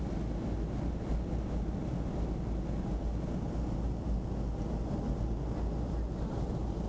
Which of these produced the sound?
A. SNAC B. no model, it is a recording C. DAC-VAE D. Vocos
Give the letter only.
B